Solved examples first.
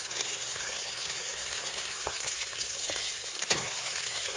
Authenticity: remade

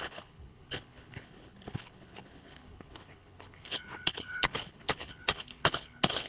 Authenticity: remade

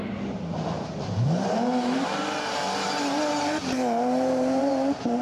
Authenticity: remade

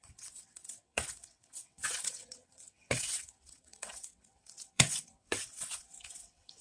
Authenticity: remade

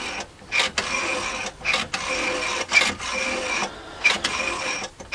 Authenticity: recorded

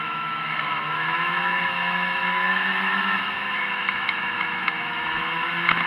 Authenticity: remade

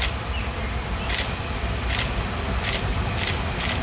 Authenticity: recorded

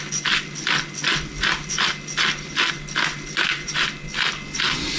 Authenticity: recorded